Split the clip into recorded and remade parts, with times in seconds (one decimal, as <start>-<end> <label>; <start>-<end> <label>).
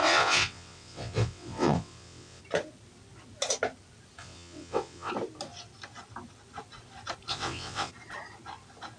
0.0-2.4 remade; 2.4-4.2 recorded; 4.2-5.1 remade; 5.1-7.3 recorded; 7.3-7.9 remade; 7.9-9.0 recorded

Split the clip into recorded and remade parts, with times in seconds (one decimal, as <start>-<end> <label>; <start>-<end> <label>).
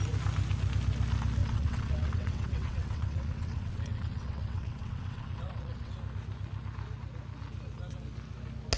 0.0-1.4 recorded; 1.4-5.9 remade; 5.9-8.8 recorded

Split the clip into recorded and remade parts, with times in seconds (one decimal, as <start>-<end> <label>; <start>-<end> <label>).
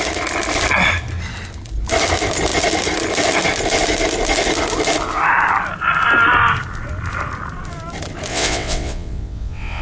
0.0-8.3 recorded; 8.3-9.8 remade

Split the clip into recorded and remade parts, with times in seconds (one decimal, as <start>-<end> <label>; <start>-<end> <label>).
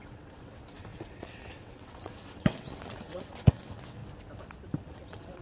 0.0-4.0 remade; 4.0-4.9 recorded; 4.9-5.4 remade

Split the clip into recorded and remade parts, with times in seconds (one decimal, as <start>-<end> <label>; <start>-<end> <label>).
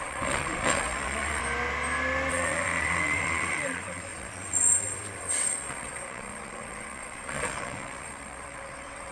0.0-1.4 remade; 1.4-2.3 recorded; 2.3-9.1 remade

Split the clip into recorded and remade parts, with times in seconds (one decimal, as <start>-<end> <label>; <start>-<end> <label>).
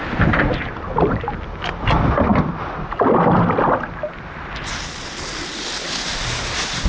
0.0-6.9 recorded